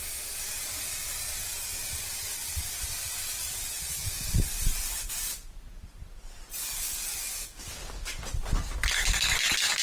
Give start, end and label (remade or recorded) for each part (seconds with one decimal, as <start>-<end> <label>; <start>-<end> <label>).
0.0-2.4 recorded; 2.4-7.2 remade; 7.2-9.8 recorded